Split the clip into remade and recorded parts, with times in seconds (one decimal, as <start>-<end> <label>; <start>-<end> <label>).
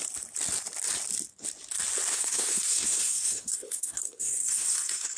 0.0-2.1 recorded; 2.1-5.2 remade